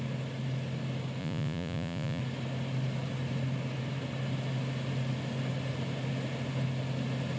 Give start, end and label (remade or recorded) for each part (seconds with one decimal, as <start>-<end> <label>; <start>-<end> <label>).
0.0-1.2 recorded; 1.2-2.2 remade; 2.2-7.4 recorded